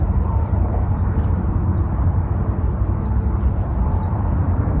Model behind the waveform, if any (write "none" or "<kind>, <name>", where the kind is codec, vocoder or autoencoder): vocoder, BigVGAN v2